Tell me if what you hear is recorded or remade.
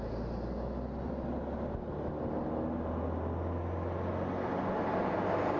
recorded